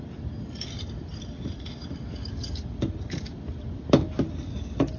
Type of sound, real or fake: real